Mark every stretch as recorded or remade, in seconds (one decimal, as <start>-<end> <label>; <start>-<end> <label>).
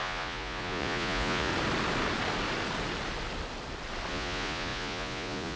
0.0-1.5 remade; 1.5-4.1 recorded; 4.1-5.6 remade